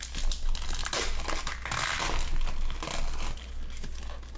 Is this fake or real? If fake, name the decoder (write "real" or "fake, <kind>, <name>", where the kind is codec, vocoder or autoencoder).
real